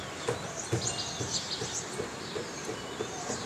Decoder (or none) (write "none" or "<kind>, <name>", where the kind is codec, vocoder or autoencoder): none